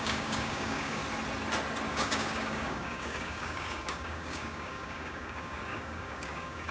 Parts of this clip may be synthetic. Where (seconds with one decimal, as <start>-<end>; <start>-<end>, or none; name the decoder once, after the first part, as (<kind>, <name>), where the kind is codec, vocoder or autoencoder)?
0.0-1.0 (codec, DAC); 1.9-6.7